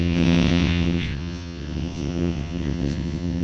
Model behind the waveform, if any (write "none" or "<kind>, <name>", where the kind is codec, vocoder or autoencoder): vocoder, WaveNeXt